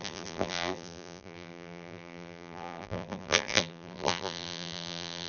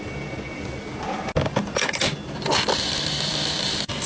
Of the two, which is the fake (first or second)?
first